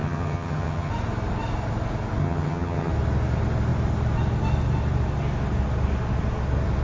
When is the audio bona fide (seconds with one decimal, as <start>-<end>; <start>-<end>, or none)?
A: 0.9-2.2; 2.9-6.8

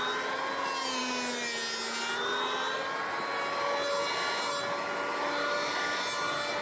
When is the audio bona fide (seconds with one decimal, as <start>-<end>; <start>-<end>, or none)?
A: 0.0-6.6

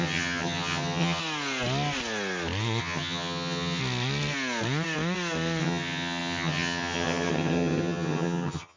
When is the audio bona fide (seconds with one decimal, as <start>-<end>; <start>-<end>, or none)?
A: 1.2-2.8; 3.8-5.6

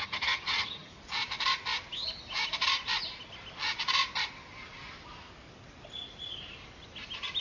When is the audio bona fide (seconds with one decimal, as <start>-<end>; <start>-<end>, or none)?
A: 0.9-7.4

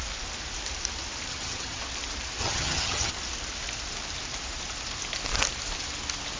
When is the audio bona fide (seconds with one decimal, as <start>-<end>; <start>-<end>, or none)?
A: 0.0-1.3; 1.8-2.4; 3.1-6.4

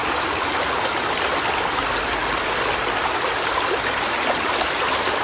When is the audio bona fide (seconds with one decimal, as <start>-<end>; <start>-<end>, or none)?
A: 0.0-5.2